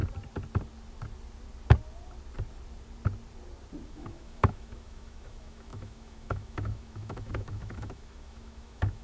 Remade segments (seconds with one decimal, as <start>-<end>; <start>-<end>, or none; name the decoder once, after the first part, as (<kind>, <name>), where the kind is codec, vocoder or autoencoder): 3.9-9.0 (autoencoder, DAC-VAE)

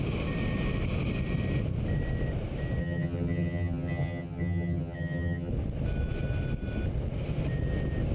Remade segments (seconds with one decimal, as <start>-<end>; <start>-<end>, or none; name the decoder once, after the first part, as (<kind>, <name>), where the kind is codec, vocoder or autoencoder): 2.8-5.5 (vocoder, HiFi-GAN)